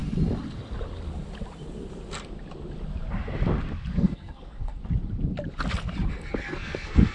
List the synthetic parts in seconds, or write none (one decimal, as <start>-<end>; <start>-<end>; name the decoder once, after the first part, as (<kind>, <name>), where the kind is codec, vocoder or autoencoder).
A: 3.9-4.8 (codec, SNAC); 6.1-7.1